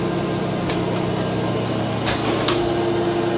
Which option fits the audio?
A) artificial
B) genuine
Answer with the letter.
B